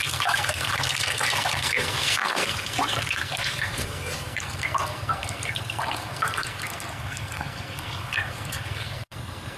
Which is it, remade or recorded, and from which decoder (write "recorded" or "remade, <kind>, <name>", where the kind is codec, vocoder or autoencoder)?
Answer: remade, codec, SNAC